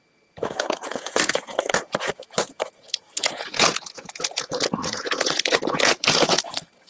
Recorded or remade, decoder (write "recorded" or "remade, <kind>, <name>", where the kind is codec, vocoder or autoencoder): remade, vocoder, Vocos